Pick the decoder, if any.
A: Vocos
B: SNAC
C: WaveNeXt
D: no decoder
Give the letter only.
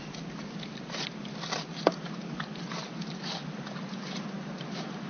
D